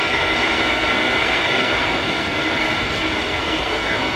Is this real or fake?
fake